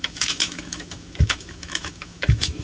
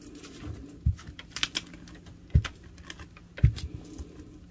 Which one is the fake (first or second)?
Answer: first